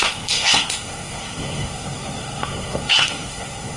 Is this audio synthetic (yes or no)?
yes